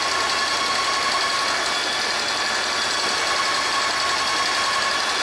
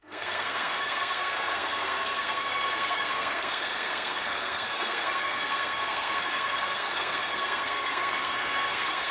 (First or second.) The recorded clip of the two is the first